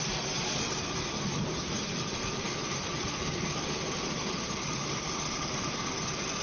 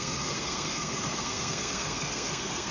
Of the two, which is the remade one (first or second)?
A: second